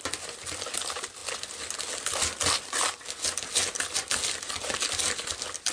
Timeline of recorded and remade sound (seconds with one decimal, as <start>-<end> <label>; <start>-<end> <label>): 0.0-5.7 recorded